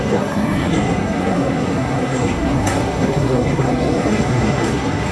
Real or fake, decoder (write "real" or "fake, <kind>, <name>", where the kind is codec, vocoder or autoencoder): fake, codec, SNAC